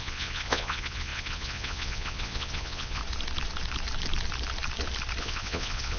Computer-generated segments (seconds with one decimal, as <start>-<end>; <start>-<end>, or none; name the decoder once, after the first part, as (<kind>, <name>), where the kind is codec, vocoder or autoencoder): 0.0-3.0 (vocoder, Vocos); 5.2-6.0